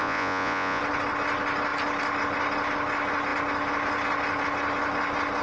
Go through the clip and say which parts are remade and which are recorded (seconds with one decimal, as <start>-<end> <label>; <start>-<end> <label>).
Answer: 0.0-0.8 remade; 0.8-5.4 recorded